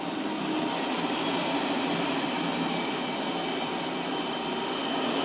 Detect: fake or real real